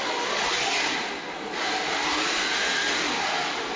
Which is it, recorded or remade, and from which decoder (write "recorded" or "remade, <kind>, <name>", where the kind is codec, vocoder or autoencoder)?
recorded